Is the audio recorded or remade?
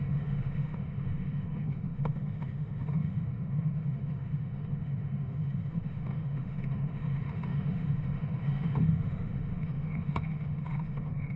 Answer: remade